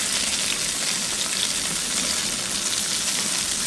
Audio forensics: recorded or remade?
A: recorded